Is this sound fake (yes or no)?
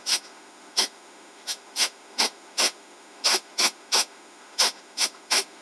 yes